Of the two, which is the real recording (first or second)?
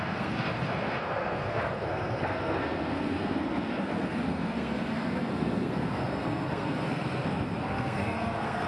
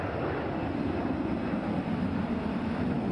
second